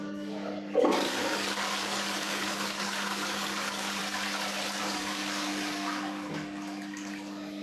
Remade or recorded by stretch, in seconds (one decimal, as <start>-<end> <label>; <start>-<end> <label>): 0.0-4.0 remade; 4.0-4.8 recorded; 4.8-7.6 remade